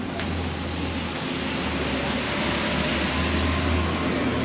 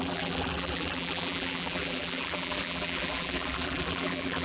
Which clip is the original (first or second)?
first